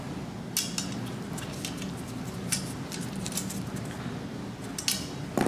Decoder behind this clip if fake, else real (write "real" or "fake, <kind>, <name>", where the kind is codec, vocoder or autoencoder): real